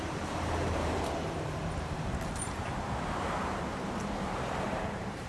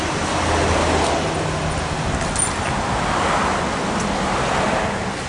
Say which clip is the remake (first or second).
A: first